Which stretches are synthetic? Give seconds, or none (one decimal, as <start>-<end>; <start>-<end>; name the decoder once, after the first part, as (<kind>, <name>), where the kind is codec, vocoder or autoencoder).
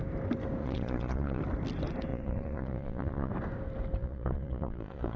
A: 0.6-1.4 (vocoder, Vocos); 2.1-3.3; 4.0-5.2